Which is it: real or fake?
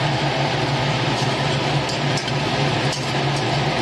fake